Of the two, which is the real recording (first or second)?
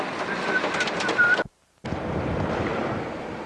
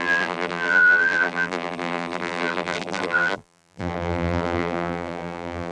first